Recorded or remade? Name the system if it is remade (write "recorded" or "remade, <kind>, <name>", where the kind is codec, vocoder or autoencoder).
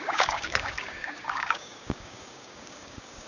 remade, codec, DAC